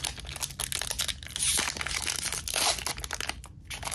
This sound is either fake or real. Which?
real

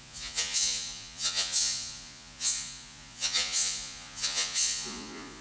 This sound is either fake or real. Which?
fake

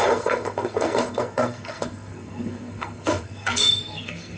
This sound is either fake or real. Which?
fake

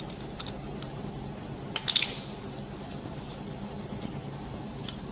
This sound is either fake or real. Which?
real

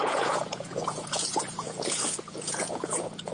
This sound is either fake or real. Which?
fake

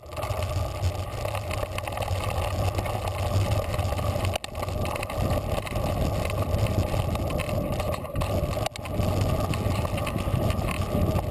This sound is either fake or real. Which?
real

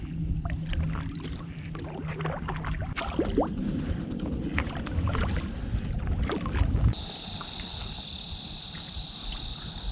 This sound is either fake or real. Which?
real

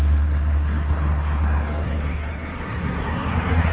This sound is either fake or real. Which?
fake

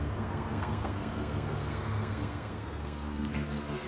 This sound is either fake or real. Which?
fake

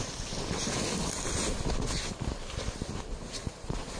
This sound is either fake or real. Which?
real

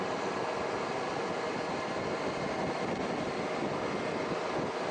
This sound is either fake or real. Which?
real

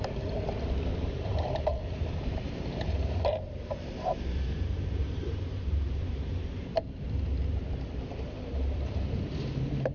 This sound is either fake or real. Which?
fake